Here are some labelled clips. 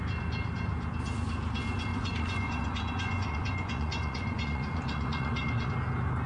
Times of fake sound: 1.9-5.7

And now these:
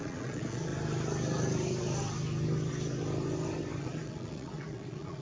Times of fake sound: 0.0-0.7; 3.8-5.2

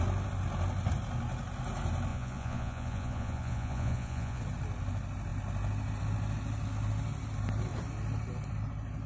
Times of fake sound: 2.1-4.4

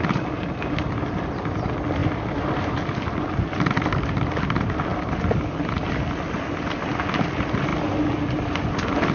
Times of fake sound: none